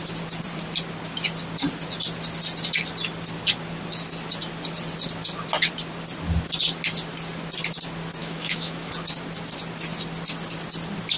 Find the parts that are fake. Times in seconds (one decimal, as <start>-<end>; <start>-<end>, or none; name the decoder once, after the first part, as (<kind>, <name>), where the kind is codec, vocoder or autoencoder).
8.2-8.9 (autoencoder, DAC-VAE)